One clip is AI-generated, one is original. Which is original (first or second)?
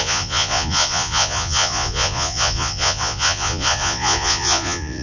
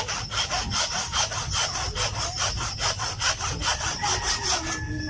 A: second